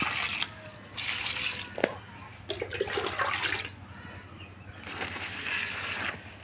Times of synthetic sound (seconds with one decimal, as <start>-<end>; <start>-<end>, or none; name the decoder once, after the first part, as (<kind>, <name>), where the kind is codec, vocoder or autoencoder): 4.9-5.5 (codec, SNAC)